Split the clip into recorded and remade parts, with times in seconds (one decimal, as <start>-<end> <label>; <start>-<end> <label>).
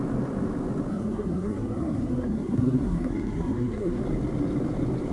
0.0-0.9 recorded; 0.9-4.0 remade; 4.0-5.1 recorded